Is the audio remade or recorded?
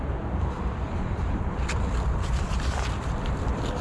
remade